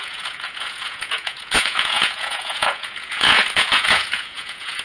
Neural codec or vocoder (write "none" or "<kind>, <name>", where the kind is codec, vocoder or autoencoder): vocoder, Vocos